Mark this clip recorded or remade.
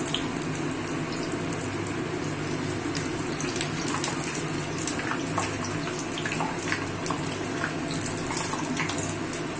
recorded